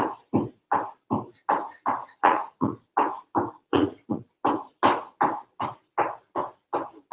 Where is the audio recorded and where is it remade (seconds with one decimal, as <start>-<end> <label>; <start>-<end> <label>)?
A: 0.0-2.0 recorded; 2.0-2.9 remade; 2.9-3.7 recorded; 3.7-4.3 remade; 4.3-7.1 recorded